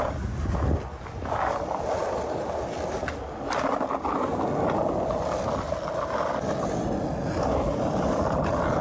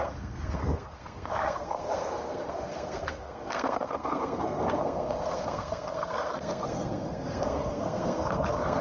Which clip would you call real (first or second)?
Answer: first